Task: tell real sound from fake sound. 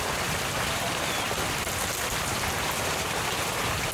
real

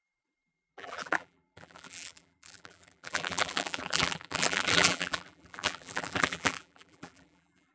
fake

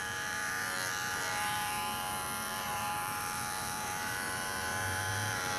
fake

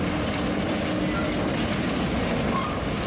real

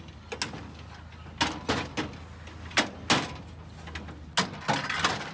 real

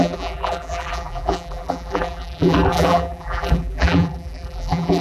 fake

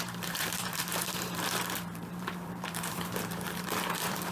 fake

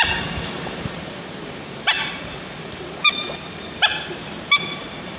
fake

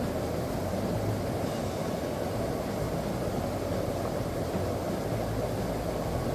real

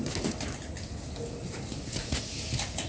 real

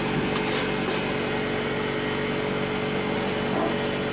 real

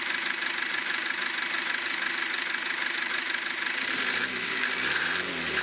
fake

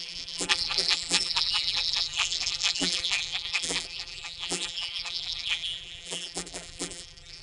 fake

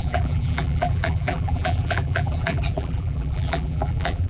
fake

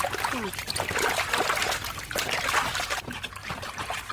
real